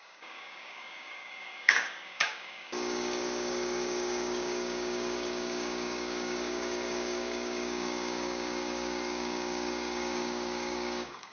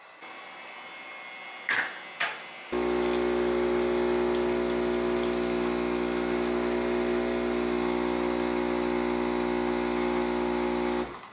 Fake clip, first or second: first